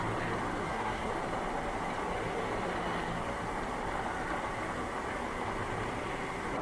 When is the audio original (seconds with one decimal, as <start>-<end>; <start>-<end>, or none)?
0.0-0.6; 1.1-6.6